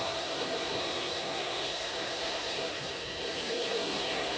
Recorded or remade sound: remade